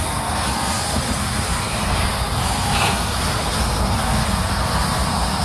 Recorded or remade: remade